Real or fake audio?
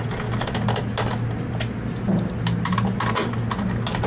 real